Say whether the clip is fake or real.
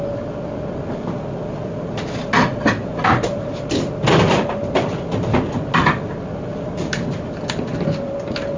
real